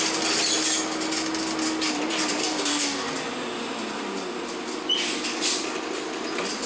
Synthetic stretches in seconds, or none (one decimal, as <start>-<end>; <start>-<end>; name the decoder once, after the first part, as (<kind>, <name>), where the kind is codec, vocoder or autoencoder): 2.4-3.1 (codec, DAC)